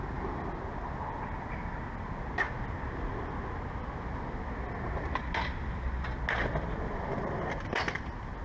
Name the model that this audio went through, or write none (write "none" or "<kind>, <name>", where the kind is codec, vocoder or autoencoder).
none